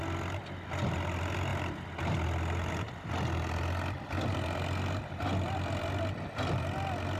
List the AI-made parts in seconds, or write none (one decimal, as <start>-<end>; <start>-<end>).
none